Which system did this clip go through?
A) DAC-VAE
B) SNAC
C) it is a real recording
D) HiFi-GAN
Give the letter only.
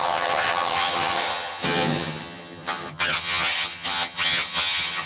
D